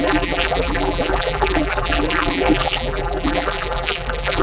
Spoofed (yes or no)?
yes